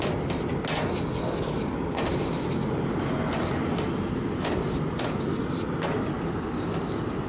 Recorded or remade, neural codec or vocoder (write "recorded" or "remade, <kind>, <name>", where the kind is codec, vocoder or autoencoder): recorded